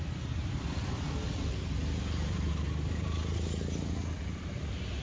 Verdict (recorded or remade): recorded